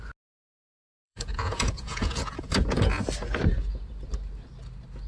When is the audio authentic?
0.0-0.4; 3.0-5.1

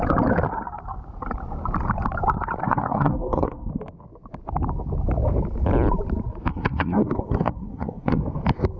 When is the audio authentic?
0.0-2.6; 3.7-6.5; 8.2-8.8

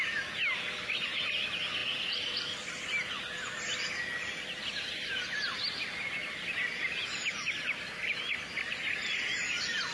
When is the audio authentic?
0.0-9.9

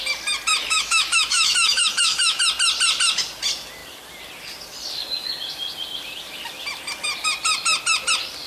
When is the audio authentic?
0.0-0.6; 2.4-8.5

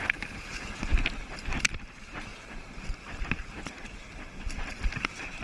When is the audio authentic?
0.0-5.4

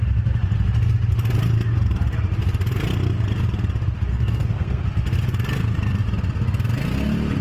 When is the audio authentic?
0.0-4.1; 4.8-7.4

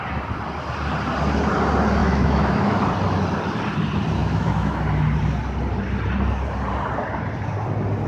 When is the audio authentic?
0.0-2.0; 2.8-4.2; 4.8-8.1